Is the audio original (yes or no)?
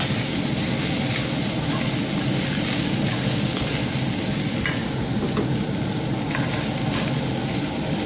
yes